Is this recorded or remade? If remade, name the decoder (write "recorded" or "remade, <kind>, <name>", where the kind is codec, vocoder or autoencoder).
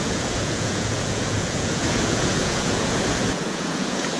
remade, vocoder, Vocos